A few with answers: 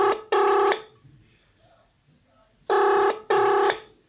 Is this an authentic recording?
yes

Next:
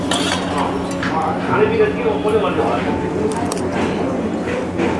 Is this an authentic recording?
yes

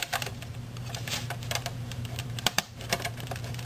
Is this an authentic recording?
no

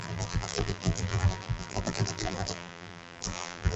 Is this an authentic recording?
no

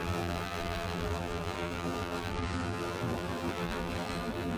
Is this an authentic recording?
no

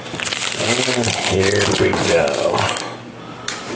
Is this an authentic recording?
yes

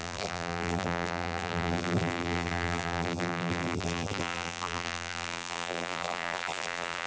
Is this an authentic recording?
no